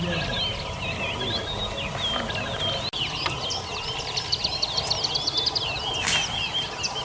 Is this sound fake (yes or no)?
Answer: no